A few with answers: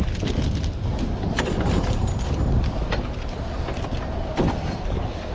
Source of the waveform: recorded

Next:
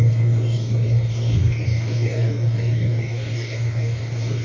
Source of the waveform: remade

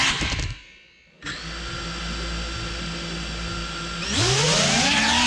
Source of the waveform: recorded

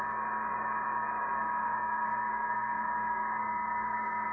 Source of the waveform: remade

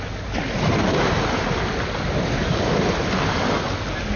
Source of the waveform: recorded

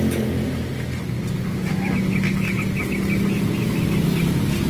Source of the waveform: recorded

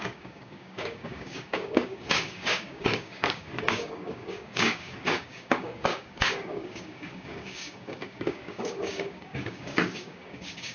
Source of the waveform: remade